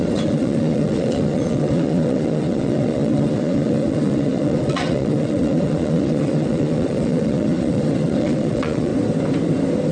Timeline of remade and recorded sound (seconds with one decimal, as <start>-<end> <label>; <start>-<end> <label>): 0.0-8.9 remade; 8.9-9.9 recorded